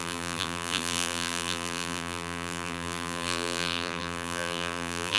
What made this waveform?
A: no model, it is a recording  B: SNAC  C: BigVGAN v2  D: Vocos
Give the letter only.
C